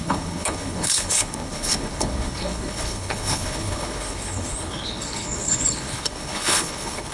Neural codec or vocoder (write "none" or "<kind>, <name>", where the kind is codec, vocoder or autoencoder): codec, HILCodec